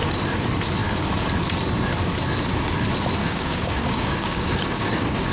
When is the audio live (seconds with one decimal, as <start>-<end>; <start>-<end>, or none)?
0.0-3.2